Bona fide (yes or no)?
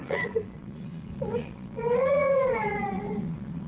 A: no